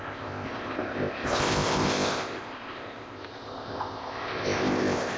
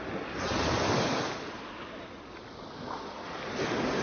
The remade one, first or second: first